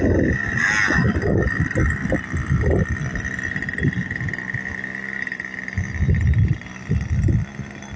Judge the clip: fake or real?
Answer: real